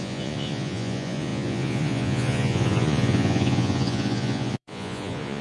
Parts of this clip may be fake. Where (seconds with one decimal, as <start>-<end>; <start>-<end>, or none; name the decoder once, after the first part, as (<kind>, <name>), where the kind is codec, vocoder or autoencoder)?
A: 0.0-5.4 (vocoder, Vocos)

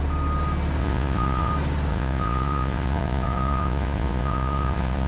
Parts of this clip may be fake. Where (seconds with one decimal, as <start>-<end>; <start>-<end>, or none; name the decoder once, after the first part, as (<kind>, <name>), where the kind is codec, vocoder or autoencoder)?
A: 0.8-1.5 (vocoder, Vocos); 1.9-5.1